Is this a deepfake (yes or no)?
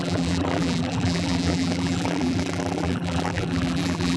yes